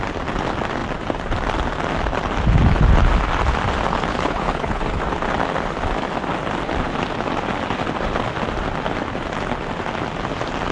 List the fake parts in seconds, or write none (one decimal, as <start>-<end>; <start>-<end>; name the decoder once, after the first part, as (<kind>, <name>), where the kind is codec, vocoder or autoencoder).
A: 4.1-4.8 (codec, HILCodec)